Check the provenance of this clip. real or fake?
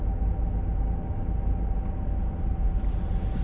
real